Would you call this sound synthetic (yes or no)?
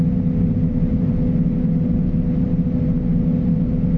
no